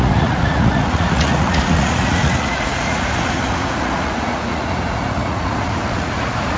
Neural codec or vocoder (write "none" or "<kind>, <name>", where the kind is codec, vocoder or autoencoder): vocoder, Vocos